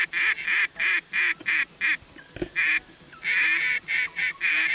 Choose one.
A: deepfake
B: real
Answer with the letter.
B